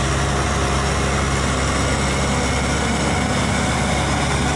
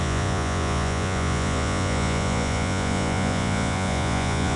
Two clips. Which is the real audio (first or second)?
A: first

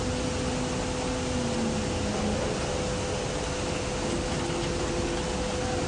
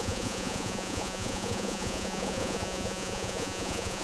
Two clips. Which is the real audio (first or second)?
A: first